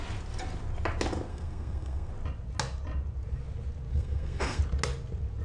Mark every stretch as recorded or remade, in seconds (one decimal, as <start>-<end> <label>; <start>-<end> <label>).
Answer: 0.0-1.3 recorded; 1.3-2.1 remade; 2.1-3.9 recorded; 3.9-4.6 remade; 4.6-5.4 recorded

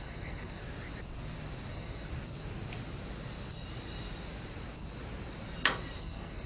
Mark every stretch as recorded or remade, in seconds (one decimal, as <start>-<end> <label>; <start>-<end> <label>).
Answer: 0.0-0.6 remade; 0.6-1.7 recorded; 1.7-2.1 remade; 2.1-6.0 recorded; 6.0-6.5 remade

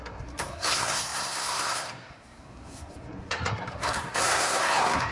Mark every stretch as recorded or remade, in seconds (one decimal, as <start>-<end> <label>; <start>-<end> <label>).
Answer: 0.0-5.1 remade

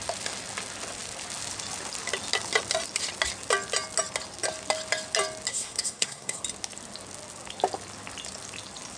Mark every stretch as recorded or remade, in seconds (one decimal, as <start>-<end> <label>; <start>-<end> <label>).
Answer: 0.0-5.5 recorded; 5.5-6.4 remade; 6.4-9.0 recorded

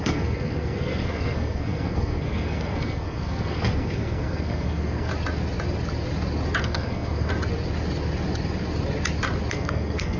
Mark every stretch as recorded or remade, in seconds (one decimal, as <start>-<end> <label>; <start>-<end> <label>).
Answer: 0.0-5.1 remade; 5.1-6.6 recorded; 6.6-7.3 remade; 7.3-9.5 recorded; 9.5-10.2 remade

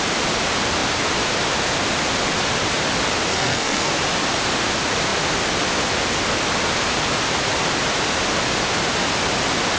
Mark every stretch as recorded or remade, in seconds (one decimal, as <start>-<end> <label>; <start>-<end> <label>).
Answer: 0.0-3.3 recorded; 3.3-3.9 remade; 3.9-9.8 recorded